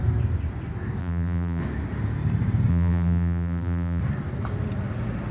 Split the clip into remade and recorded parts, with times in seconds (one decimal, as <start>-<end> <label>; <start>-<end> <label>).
0.0-1.0 recorded; 1.0-1.6 remade; 1.6-2.7 recorded; 2.7-4.0 remade; 4.0-5.3 recorded